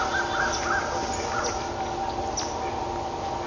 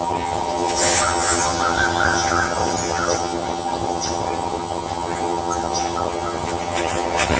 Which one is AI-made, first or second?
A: second